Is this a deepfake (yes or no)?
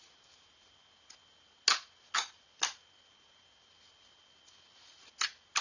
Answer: no